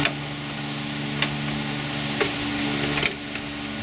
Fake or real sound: real